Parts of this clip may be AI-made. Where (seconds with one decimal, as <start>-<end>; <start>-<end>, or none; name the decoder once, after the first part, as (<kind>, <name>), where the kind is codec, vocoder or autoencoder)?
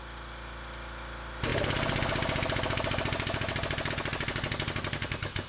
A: none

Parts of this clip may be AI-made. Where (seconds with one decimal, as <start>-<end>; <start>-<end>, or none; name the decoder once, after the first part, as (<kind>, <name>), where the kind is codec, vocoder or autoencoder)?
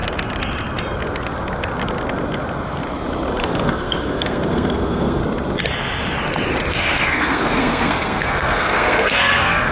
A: 3.4-5.2 (codec, SNAC); 6.7-9.7